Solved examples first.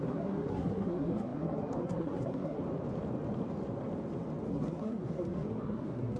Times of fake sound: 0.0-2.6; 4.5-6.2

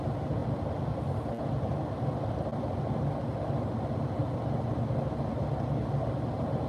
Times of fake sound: none

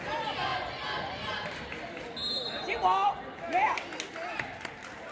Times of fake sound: none

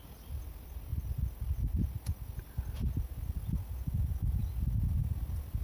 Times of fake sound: none